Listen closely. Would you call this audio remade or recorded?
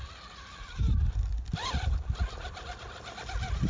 recorded